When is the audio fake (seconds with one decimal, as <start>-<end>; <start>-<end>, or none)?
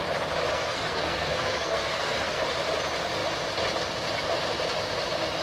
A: 0.5-2.4